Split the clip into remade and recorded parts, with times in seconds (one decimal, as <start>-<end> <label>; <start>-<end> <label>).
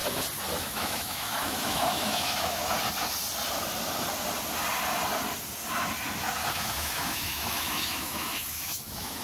0.0-0.6 recorded; 0.6-2.6 remade; 2.6-6.5 recorded; 6.5-9.2 remade